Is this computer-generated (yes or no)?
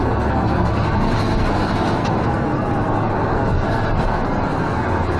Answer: yes